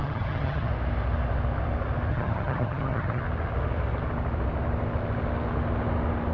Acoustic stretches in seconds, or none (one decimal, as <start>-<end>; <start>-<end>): 0.7-2.1; 3.2-6.3